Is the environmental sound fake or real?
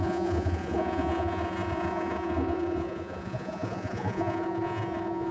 fake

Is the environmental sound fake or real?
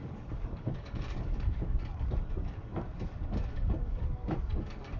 fake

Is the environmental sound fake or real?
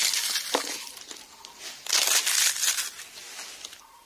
real